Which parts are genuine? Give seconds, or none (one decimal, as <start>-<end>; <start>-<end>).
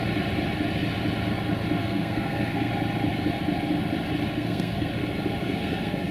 0.0-1.8; 2.7-4.3; 5.0-5.4